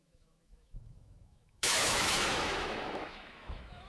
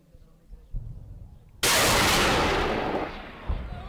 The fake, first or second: first